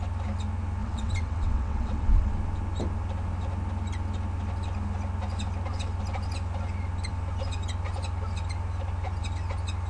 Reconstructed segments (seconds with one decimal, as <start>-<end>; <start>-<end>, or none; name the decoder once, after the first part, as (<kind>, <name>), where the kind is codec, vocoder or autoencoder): 0.8-2.3 (vocoder, WaveNeXt)